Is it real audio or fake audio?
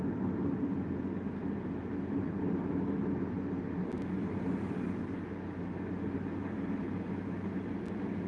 real